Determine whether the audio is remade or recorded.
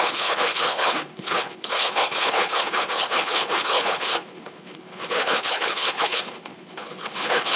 remade